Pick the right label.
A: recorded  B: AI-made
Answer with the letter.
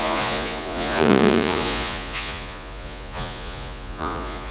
B